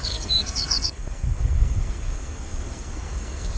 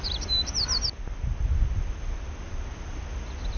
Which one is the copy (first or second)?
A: first